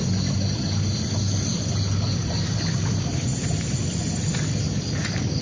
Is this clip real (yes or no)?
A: yes